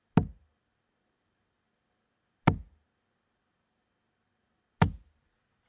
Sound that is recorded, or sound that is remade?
recorded